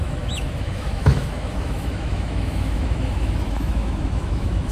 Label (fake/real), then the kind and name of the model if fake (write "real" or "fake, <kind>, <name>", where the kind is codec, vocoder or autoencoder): fake, autoencoder, DAC-VAE